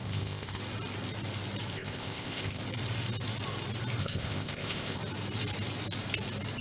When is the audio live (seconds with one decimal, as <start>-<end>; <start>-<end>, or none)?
0.6-1.7; 2.6-4.0; 5.0-6.6